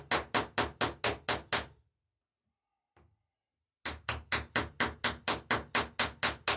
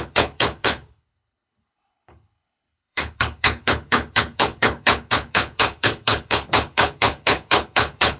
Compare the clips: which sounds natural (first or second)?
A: first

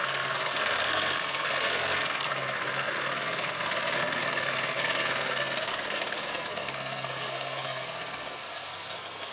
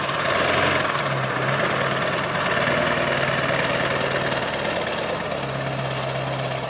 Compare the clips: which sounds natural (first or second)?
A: second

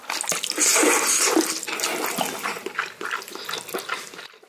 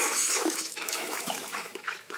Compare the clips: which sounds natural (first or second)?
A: first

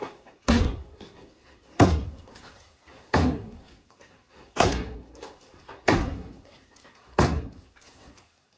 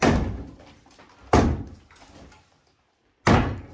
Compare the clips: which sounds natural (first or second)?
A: second